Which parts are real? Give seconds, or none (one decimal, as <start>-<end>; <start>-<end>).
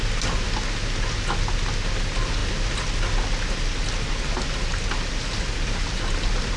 0.0-6.6